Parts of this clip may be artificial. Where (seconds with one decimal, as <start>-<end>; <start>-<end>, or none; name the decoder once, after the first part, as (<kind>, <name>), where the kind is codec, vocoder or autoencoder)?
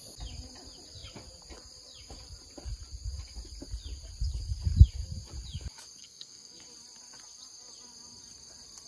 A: 6.0-6.6 (codec, SNAC)